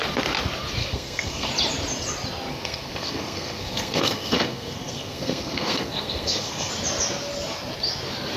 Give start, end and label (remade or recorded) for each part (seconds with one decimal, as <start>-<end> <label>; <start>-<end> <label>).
0.0-0.8 recorded; 0.8-1.5 remade; 1.5-2.5 recorded; 2.5-6.7 remade; 6.7-8.4 recorded